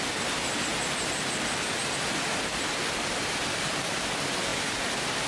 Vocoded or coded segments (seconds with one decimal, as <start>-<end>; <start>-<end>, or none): none